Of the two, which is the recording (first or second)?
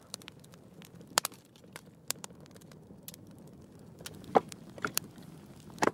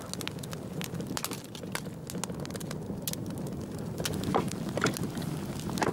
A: second